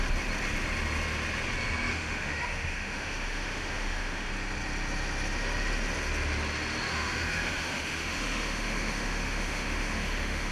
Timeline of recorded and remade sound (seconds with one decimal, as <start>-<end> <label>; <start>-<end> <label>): 0.0-1.9 recorded; 1.9-4.3 remade; 4.3-6.9 recorded; 6.9-10.5 remade